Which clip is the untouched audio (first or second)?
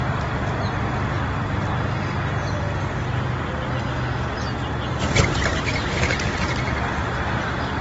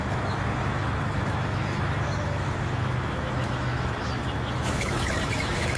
first